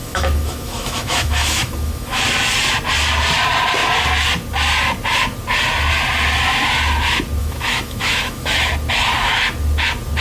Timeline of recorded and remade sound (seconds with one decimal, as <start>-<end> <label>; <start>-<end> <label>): 0.0-2.2 remade; 2.2-7.4 recorded; 7.4-8.7 remade; 8.7-10.2 recorded